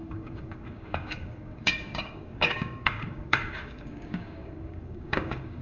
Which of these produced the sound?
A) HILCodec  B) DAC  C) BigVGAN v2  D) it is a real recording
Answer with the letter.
B